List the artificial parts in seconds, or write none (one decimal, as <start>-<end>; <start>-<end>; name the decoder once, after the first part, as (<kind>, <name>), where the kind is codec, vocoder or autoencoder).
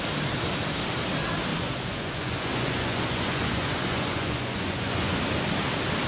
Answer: 1.5-5.2 (vocoder, Vocos)